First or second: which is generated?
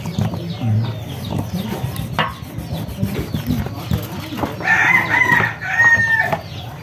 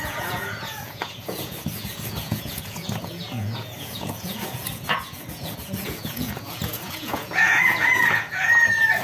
second